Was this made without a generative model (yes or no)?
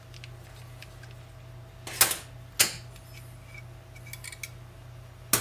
yes